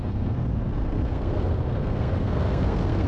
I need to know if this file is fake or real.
fake